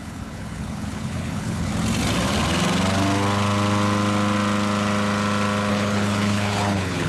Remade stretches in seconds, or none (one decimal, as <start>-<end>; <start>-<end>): 0.0-1.7; 5.7-7.1